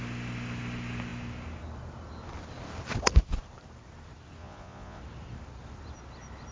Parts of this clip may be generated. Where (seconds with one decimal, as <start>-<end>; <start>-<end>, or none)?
4.4-5.0